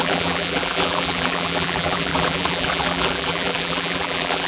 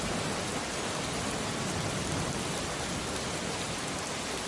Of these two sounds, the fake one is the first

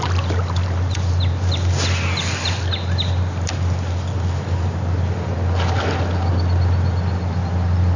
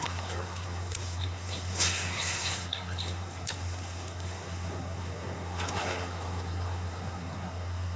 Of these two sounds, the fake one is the second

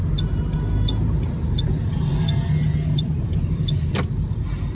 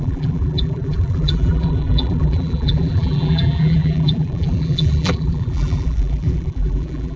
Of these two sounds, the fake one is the second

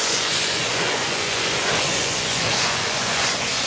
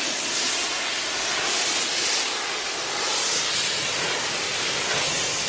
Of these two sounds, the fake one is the first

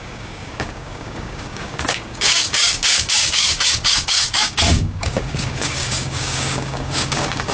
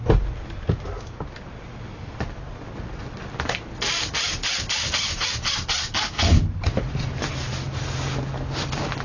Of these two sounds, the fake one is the first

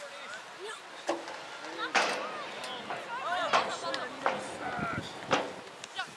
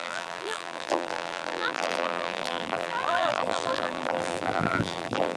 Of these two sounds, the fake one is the second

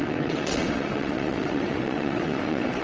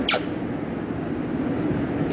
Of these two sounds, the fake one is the first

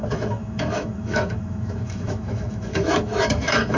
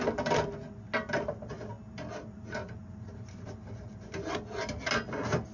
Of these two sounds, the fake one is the first